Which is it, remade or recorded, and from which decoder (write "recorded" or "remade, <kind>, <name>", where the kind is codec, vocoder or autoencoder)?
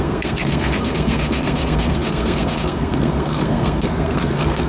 remade, codec, SNAC